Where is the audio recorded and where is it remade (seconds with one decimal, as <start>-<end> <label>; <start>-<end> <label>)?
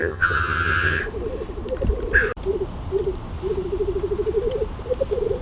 0.0-1.0 remade; 1.0-5.4 recorded